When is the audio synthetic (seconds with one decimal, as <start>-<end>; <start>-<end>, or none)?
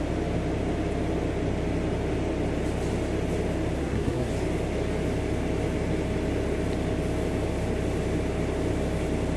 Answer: 3.8-4.3